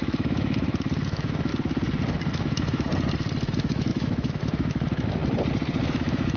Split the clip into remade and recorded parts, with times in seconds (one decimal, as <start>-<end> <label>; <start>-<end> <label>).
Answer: 0.0-1.5 remade; 1.5-2.3 recorded; 2.3-2.9 remade; 2.9-3.5 recorded; 3.5-5.2 remade; 5.2-5.9 recorded; 5.9-6.4 remade